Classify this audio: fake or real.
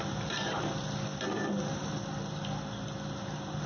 fake